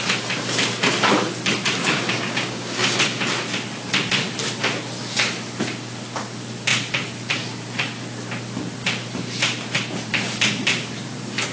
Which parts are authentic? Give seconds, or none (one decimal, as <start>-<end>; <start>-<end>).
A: 0.0-1.8; 3.0-11.5

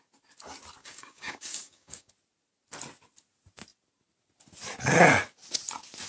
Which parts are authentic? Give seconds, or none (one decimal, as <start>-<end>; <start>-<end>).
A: 0.0-0.8; 2.1-6.1

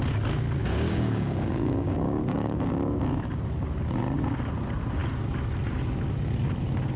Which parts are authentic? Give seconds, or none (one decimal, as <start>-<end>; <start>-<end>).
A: 0.0-0.6; 3.4-7.0

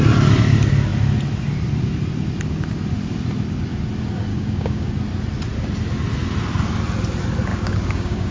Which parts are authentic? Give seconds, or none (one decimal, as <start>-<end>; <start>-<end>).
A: 0.0-4.3; 4.9-7.5

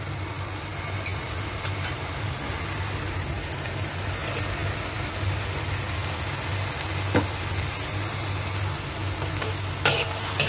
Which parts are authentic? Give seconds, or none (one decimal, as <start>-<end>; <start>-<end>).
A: 0.0-10.5

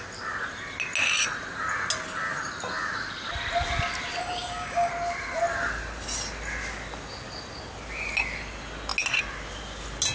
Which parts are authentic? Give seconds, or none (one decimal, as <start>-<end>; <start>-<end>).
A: 0.0-4.2; 4.9-10.1

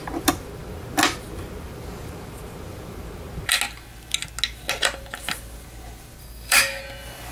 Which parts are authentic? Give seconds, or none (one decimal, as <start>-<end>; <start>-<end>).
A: 0.0-6.2; 6.8-7.3